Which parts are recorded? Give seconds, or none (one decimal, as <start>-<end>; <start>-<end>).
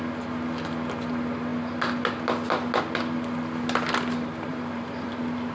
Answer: 0.0-4.5; 5.1-5.5